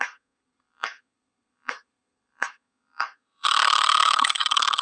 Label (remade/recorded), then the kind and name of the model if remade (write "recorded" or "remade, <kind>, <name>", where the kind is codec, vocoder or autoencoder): remade, codec, SNAC